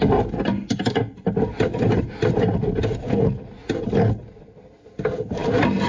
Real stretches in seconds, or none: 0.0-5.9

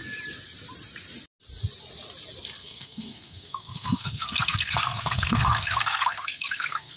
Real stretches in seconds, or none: 0.0-2.6

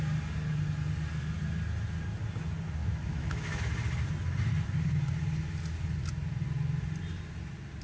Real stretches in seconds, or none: 0.0-2.8; 3.6-7.8